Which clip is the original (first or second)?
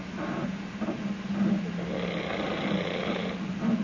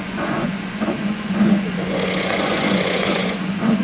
first